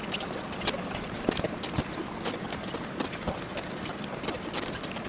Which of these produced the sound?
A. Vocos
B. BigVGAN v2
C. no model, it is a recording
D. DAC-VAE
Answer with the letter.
C